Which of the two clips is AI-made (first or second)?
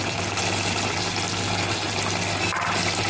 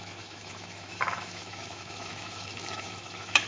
second